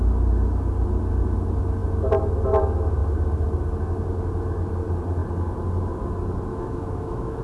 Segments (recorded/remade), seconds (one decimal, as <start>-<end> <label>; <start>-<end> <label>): 0.0-6.5 recorded; 6.5-7.4 remade